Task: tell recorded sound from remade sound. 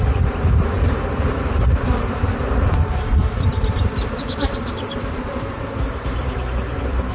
remade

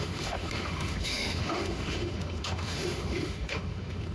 remade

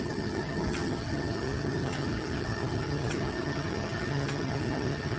remade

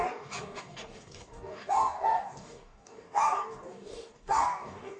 remade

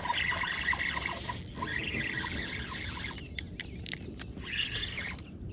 recorded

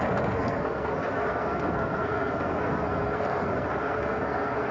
remade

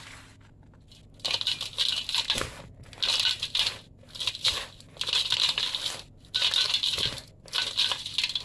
recorded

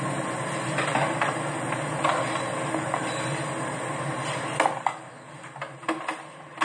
recorded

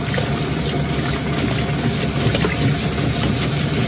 recorded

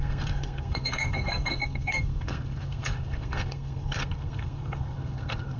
remade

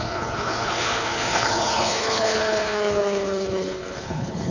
remade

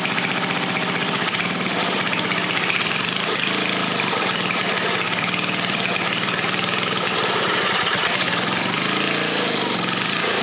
remade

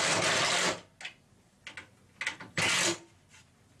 recorded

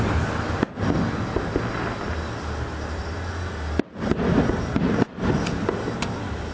recorded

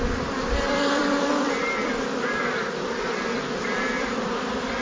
remade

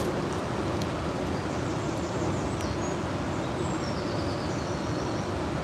recorded